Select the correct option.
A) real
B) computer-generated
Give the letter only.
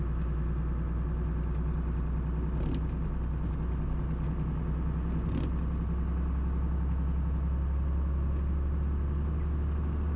A